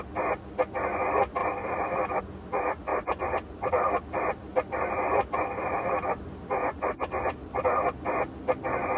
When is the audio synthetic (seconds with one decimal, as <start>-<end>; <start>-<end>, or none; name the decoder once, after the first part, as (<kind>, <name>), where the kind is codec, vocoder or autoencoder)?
1.4-2.2 (vocoder, BigVGAN v2); 2.9-6.8